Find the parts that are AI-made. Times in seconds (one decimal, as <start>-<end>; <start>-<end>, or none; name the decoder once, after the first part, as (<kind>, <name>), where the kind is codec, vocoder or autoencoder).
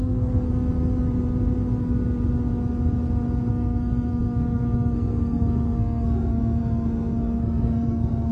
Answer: 0.0-0.5 (codec, SNAC); 3.5-8.3